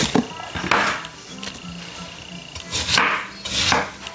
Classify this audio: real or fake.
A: real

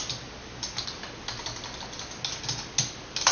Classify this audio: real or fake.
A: real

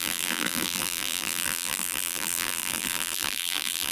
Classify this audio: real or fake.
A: fake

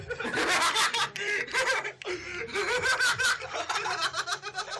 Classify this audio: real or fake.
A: fake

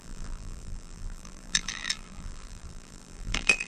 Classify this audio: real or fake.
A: fake